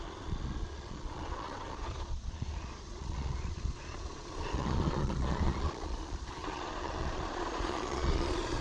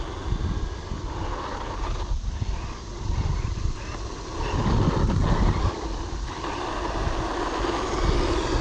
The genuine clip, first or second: second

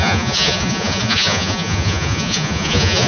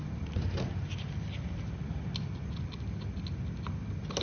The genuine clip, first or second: second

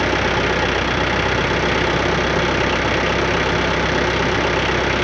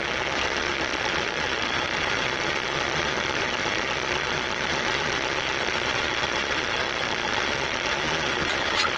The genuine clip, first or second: first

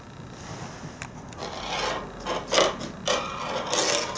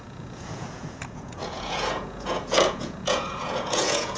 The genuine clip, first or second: first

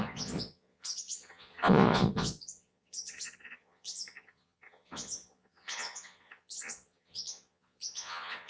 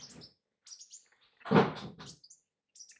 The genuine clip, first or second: second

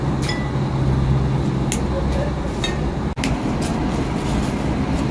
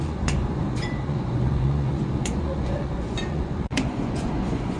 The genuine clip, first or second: first